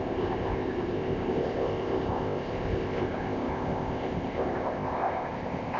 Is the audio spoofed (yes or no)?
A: yes